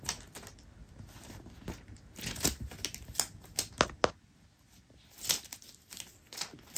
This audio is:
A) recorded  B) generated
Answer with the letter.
A